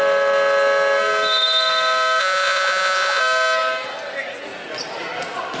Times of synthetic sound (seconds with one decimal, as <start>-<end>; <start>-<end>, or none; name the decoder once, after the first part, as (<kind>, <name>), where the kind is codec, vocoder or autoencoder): 2.2-3.2 (vocoder, Vocos)